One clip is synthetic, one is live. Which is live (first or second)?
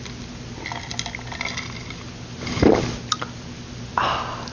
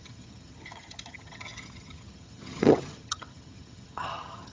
first